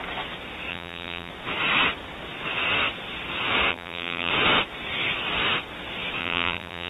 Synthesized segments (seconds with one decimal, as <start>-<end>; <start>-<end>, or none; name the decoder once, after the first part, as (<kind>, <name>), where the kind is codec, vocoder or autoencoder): 0.7-1.3 (vocoder, BigVGAN v2); 3.7-4.3; 6.2-6.9